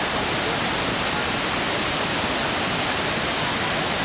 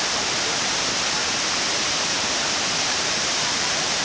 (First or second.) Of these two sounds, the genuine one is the first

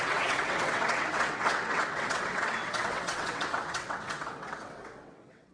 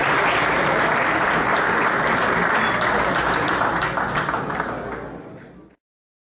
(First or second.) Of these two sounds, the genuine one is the second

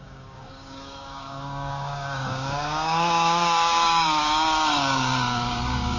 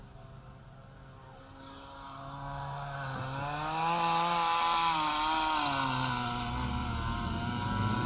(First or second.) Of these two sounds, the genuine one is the second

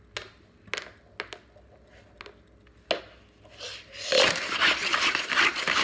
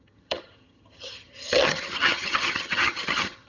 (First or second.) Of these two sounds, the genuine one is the first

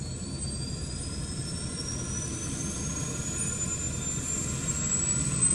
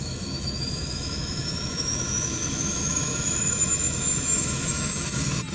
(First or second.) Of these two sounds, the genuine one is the first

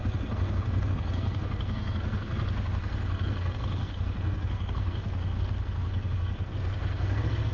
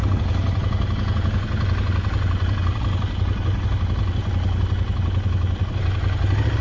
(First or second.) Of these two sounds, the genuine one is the second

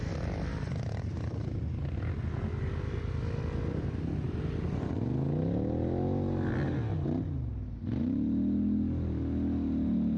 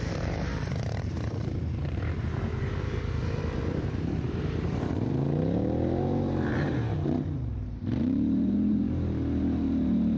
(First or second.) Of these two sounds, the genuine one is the first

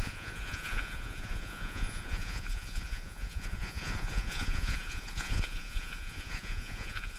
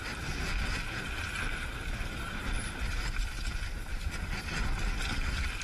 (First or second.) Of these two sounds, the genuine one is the second